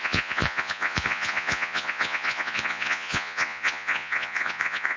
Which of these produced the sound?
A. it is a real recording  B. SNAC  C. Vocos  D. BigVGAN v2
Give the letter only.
C